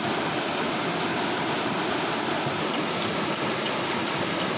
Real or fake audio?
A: real